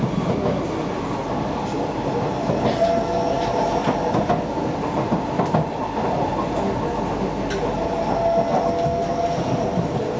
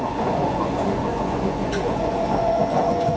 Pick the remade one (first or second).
second